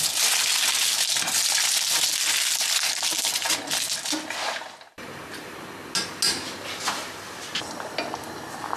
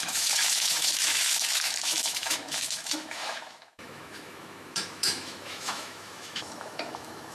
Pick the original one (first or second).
first